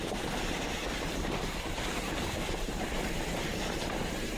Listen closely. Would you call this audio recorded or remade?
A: recorded